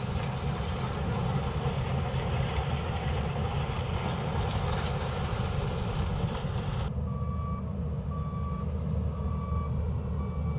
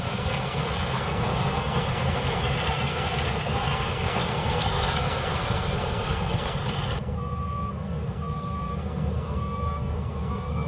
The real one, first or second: first